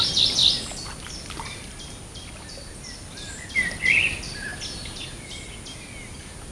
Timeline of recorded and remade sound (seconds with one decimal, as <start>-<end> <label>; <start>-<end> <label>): 0.0-0.4 remade; 0.4-3.1 recorded; 3.1-4.5 remade; 4.5-6.5 recorded